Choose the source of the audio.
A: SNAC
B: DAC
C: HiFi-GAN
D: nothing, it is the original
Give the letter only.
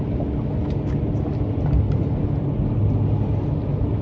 D